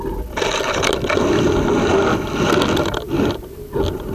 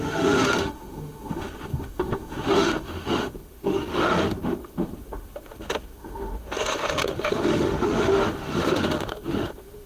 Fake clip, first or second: second